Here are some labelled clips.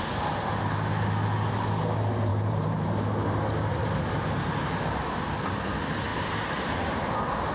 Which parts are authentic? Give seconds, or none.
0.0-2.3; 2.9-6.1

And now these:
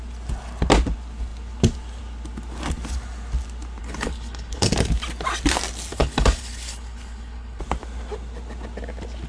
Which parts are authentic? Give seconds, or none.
0.0-3.8; 4.7-5.9; 7.6-9.3

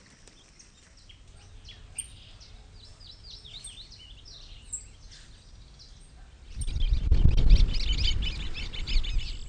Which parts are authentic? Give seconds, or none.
0.0-9.5

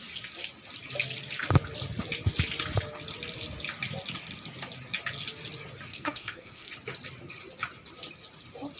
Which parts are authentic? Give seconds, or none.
0.0-5.9; 6.7-8.8

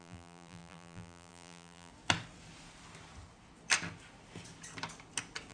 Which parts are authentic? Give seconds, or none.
1.9-5.5

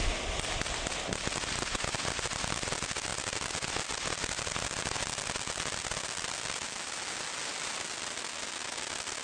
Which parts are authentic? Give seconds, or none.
0.0-9.2